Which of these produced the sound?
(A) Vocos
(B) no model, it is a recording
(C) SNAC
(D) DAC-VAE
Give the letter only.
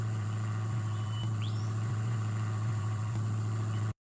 A